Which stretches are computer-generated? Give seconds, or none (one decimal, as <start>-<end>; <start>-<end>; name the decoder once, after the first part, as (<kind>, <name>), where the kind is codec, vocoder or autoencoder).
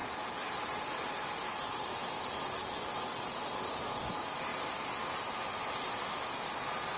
none